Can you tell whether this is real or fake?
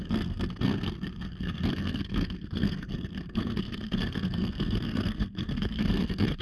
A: fake